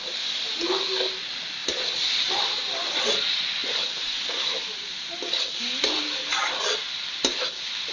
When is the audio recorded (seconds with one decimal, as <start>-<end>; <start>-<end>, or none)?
0.0-1.6; 2.3-3.6; 7.2-7.9